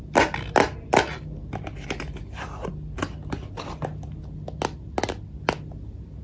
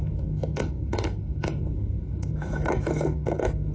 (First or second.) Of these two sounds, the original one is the first